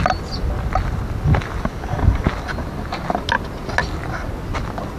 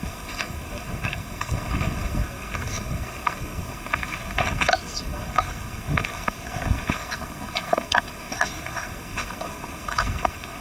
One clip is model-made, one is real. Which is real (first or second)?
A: first